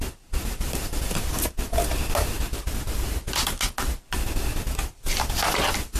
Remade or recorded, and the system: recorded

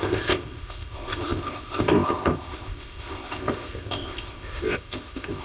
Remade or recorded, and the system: remade, codec, ZipCodec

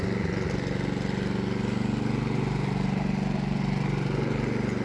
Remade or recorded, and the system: recorded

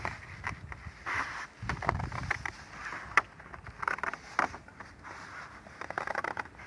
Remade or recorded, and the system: recorded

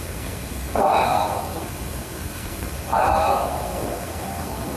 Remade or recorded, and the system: remade, codec, SNAC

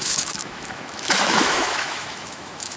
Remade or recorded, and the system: remade, autoencoder, DAC-VAE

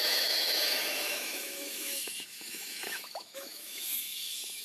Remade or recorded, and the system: remade, autoencoder, DAC-VAE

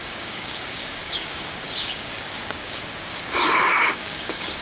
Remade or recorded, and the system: remade, codec, DAC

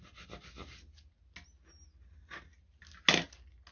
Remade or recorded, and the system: recorded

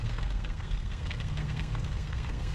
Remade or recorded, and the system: remade, codec, SNAC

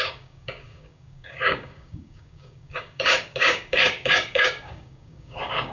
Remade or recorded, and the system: remade, codec, DAC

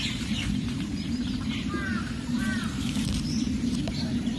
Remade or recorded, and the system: remade, vocoder, BigVGAN v2